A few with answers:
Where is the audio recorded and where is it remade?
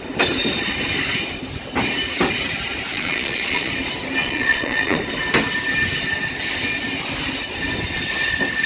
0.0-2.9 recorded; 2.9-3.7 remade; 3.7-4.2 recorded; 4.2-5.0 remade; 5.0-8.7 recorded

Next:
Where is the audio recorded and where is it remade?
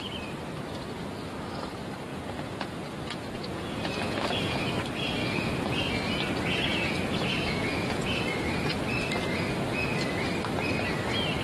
0.0-2.1 recorded; 2.1-4.6 remade; 4.6-5.2 recorded; 5.2-5.8 remade; 5.8-6.7 recorded; 6.7-8.2 remade; 8.2-11.4 recorded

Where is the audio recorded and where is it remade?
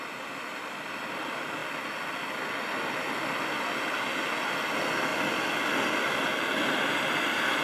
0.0-7.6 recorded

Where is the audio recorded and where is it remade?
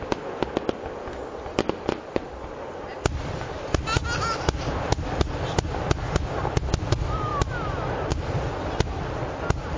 0.0-9.8 recorded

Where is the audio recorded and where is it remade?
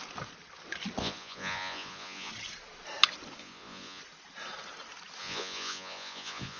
0.0-1.0 recorded; 1.0-2.3 remade; 2.3-3.4 recorded; 3.4-4.0 remade; 4.0-5.2 recorded; 5.2-6.6 remade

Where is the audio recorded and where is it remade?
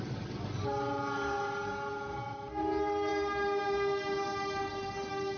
0.0-5.4 recorded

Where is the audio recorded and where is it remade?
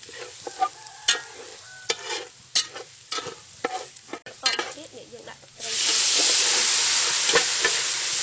0.0-8.2 recorded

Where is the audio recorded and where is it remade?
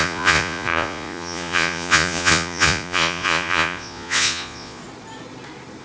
0.0-4.8 remade; 4.8-5.8 recorded